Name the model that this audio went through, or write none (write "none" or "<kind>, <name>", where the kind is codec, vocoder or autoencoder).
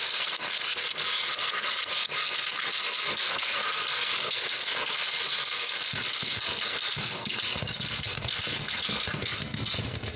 codec, SNAC